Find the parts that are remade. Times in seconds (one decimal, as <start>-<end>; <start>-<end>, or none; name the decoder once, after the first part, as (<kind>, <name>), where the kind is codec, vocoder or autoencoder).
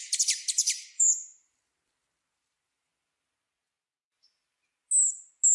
0.0-2.9 (vocoder, BigVGAN v2)